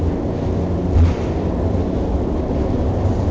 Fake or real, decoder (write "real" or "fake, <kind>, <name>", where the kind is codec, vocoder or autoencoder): real